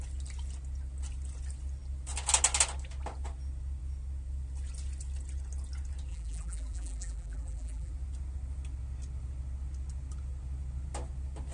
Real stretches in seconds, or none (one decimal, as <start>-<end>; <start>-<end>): 0.0-6.1; 7.9-11.5